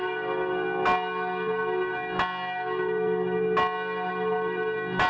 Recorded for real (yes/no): yes